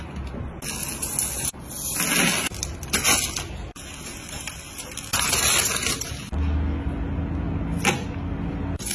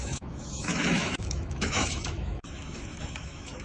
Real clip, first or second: first